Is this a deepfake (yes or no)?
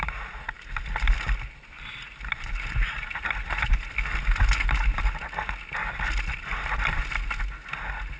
no